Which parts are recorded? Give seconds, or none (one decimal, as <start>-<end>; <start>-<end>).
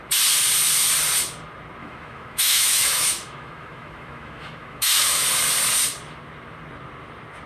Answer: 0.0-1.8; 5.2-7.5